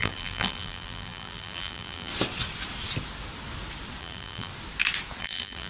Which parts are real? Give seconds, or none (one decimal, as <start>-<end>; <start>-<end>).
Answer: 2.1-4.0; 4.5-5.2